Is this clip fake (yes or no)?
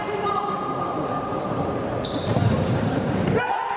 yes